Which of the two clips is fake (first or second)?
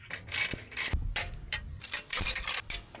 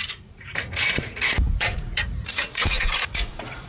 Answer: second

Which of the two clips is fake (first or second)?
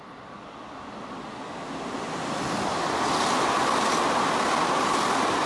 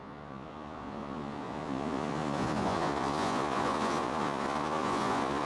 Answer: second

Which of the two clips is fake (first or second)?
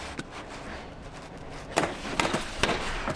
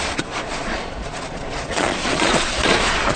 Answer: second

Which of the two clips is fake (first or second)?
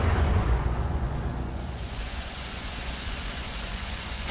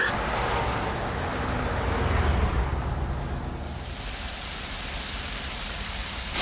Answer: first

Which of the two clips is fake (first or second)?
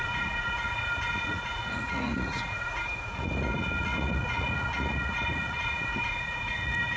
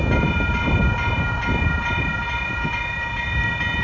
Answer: first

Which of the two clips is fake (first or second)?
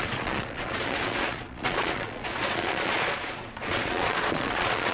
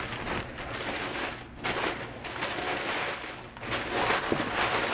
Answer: first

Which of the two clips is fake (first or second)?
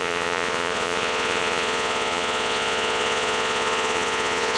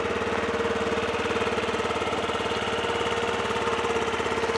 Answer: first